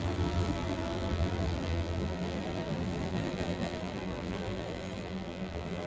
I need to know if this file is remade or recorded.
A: remade